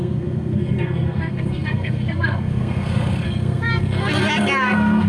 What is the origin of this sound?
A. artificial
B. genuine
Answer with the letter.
A